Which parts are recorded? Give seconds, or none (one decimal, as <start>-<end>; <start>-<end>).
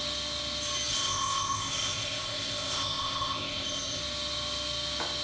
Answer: 0.0-0.9; 4.0-5.2